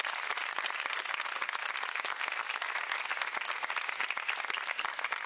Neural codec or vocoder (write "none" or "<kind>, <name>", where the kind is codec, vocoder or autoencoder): none